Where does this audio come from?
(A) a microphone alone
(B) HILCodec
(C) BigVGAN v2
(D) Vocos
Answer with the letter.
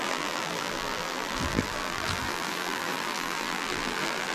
C